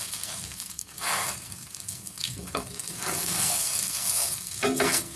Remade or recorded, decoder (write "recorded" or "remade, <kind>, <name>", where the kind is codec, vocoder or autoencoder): remade, codec, SNAC